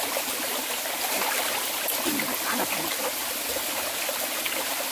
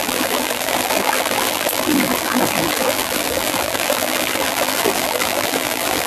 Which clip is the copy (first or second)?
second